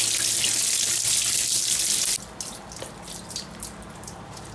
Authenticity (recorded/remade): recorded